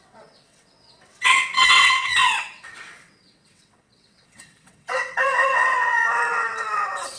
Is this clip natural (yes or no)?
no